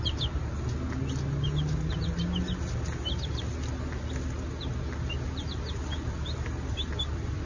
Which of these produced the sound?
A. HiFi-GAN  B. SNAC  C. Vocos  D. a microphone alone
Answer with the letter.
D